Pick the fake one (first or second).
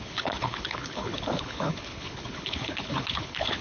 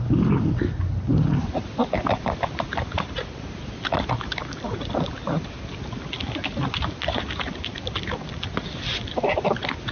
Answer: first